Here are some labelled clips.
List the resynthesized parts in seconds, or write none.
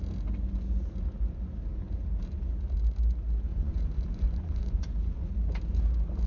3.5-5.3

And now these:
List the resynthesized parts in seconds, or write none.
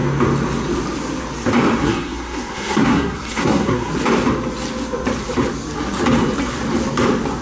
1.8-3.9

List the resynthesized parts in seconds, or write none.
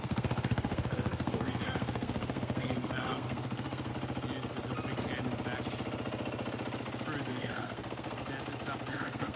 0.0-3.9; 7.3-8.2; 8.9-9.4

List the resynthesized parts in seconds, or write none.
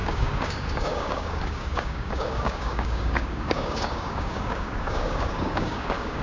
0.0-6.2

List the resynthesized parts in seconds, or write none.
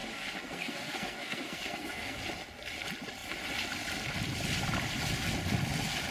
0.0-2.2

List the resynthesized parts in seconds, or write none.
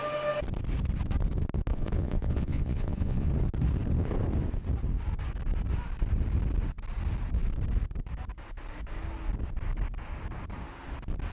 1.7-3.3